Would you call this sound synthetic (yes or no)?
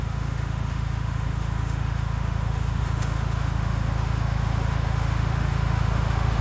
yes